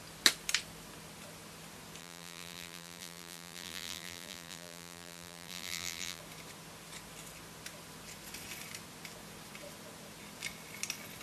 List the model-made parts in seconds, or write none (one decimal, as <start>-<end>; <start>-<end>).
2.0-6.2